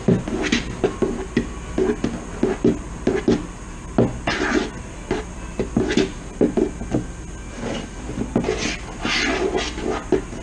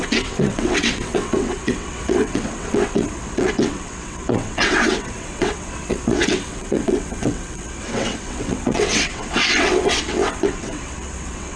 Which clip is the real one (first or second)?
first